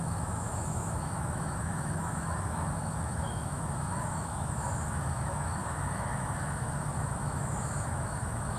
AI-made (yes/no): yes